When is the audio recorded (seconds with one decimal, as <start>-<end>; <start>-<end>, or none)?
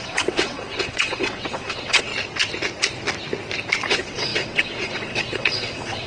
2.1-3.9